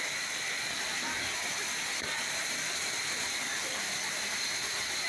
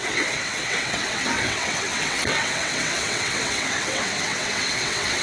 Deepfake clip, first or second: second